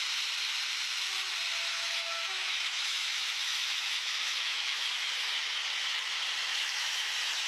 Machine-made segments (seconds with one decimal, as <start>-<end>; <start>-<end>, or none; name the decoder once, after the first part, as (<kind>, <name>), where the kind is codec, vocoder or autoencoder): 1.7-5.1 (autoencoder, DAC-VAE); 6.5-7.0